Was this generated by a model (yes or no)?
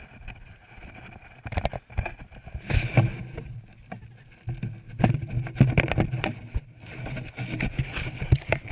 no